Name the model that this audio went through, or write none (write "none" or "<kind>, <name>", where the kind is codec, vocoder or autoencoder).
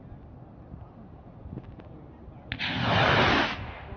none